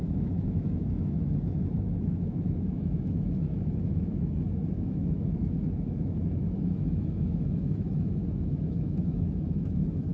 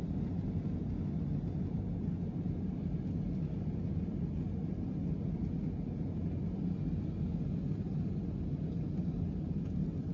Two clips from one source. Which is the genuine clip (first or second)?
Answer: second